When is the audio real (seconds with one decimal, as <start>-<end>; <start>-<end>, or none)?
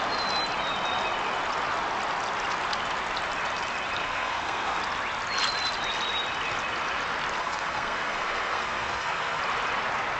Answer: 0.0-4.0; 4.8-7.4; 9.4-10.2